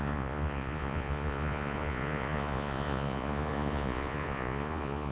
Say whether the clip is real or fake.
fake